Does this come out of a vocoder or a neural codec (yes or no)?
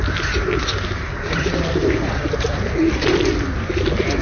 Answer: no